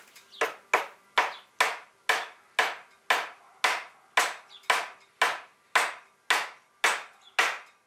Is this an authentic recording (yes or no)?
yes